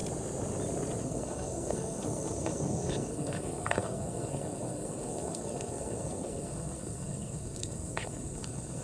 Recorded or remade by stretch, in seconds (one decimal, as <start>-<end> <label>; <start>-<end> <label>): 0.0-1.0 recorded; 1.0-8.8 remade